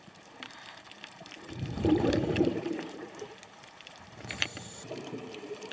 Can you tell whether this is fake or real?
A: fake